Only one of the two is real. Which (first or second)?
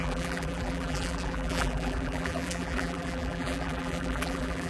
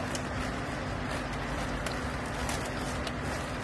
second